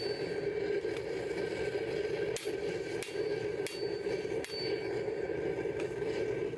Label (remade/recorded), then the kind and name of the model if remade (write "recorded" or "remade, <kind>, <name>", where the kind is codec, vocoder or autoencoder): recorded